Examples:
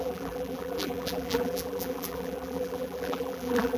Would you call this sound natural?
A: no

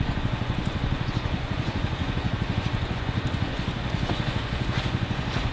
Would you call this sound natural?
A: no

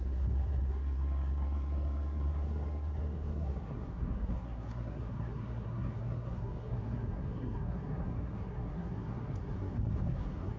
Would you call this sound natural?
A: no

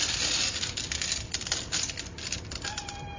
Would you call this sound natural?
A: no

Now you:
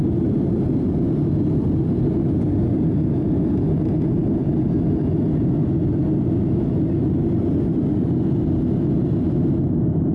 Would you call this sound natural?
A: yes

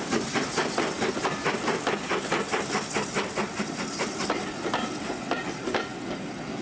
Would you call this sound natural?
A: yes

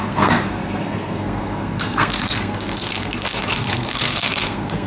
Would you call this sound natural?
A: no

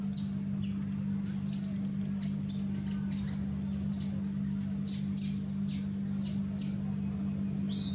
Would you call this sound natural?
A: yes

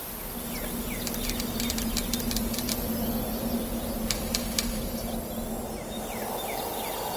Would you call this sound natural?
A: yes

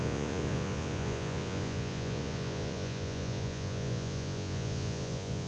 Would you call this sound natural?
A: no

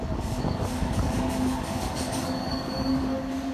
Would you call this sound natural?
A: no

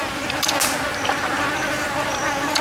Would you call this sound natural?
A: yes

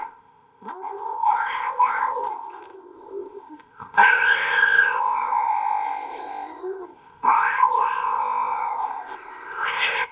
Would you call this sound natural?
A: no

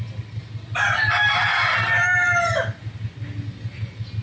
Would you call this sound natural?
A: yes